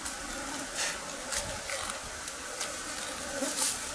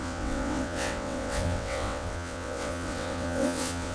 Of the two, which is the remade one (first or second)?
second